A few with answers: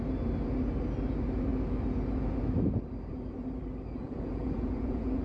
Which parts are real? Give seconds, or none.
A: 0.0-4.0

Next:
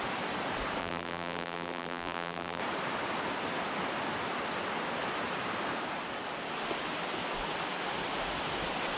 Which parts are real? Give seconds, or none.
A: 0.0-0.8; 2.6-9.0

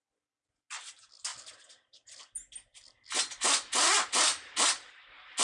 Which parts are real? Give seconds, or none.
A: 0.0-5.4

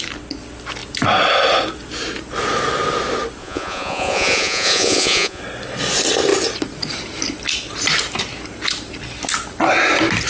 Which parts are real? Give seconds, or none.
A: 0.0-3.4; 5.4-10.3

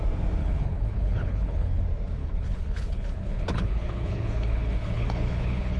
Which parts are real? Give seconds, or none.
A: 0.0-0.4; 1.8-2.2

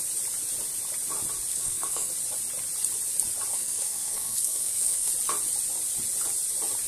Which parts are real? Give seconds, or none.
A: 0.0-1.5; 2.1-3.5; 5.1-6.9

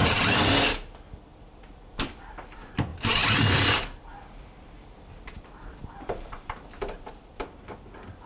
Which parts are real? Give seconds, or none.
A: 0.5-1.3; 2.3-2.9; 7.6-8.3